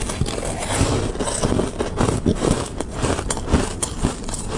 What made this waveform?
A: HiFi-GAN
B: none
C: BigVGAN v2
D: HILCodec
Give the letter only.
B